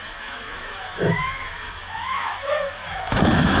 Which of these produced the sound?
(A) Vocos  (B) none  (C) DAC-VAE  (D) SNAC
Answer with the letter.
C